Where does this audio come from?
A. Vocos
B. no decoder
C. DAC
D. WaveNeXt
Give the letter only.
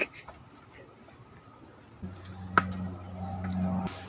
B